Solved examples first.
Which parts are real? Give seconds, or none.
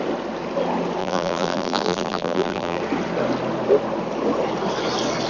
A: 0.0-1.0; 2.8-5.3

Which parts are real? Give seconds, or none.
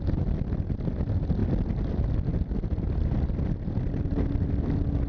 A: none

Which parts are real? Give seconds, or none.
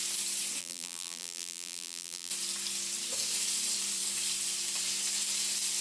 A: 0.0-0.6; 2.3-5.8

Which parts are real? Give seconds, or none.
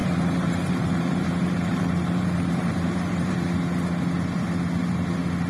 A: 3.3-5.5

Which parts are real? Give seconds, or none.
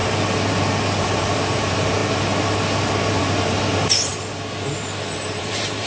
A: 0.0-1.0; 2.0-3.2; 4.1-5.4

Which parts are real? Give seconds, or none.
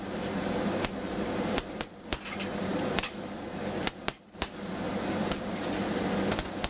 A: 0.0-6.7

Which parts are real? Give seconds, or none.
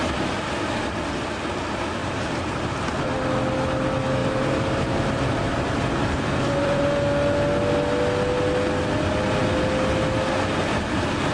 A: 0.0-2.0; 2.7-4.2; 6.8-11.3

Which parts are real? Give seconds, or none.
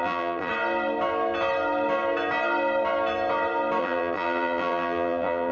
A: 0.5-3.8